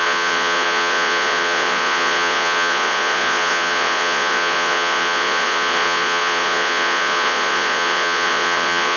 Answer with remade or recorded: remade